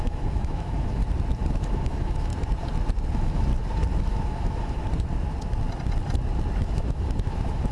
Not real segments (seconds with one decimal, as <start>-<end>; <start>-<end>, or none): 0.0-1.0; 1.6-2.3; 3.1-3.5; 4.0-4.8; 6.6-7.7